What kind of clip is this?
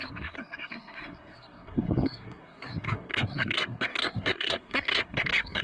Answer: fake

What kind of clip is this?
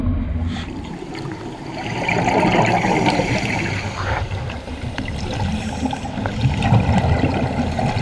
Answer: real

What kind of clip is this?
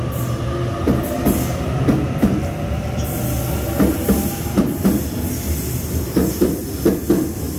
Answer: real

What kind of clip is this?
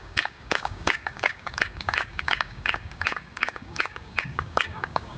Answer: fake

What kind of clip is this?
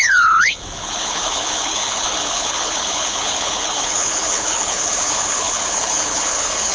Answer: fake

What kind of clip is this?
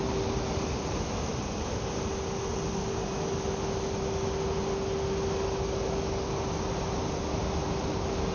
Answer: real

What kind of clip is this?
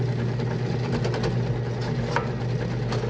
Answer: real